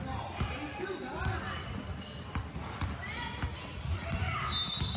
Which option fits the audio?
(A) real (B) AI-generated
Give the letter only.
A